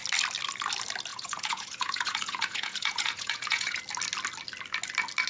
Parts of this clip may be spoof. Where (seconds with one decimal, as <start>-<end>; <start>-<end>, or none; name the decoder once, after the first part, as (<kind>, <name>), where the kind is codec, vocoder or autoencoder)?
1.1-3.8 (vocoder, Vocos)